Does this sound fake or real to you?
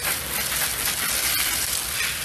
real